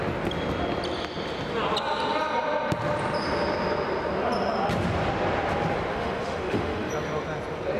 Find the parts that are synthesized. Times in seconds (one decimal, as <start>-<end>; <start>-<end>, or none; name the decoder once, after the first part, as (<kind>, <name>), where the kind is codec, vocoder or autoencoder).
5.9-6.9 (autoencoder, DAC-VAE)